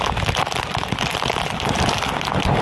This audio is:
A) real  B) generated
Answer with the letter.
A